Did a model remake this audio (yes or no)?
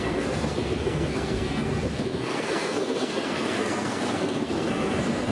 yes